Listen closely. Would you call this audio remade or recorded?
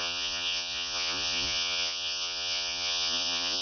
remade